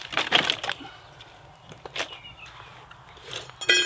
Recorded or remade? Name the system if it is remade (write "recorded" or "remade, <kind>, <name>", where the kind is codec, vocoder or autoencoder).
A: recorded